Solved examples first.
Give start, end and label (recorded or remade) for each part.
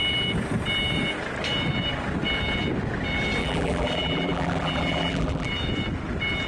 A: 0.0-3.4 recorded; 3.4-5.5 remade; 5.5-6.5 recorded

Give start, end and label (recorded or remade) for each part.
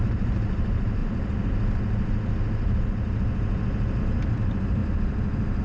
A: 0.0-1.0 remade; 1.0-4.0 recorded; 4.0-4.8 remade; 4.8-5.6 recorded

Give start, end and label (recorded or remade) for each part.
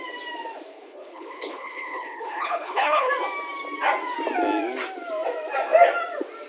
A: 0.0-0.7 recorded; 0.7-3.1 remade; 3.1-6.5 recorded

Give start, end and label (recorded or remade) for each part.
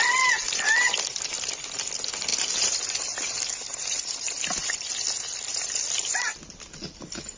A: 0.0-2.3 recorded; 2.3-2.8 remade; 2.8-3.7 recorded; 3.7-4.9 remade; 4.9-7.4 recorded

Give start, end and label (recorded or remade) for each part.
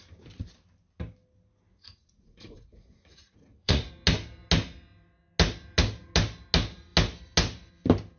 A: 0.0-1.7 recorded; 1.7-3.9 remade; 3.9-8.2 recorded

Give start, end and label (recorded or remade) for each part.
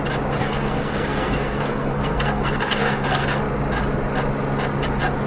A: 0.0-0.4 recorded; 0.4-3.4 remade; 3.4-5.3 recorded